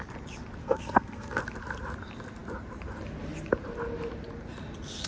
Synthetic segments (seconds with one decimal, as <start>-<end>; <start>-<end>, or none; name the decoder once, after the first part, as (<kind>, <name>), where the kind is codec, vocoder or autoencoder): 0.6-1.4 (codec, SNAC)